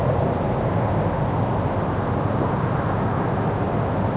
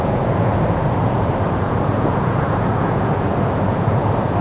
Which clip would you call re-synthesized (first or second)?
second